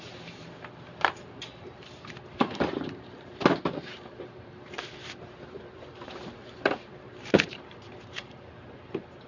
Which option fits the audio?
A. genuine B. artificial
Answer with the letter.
B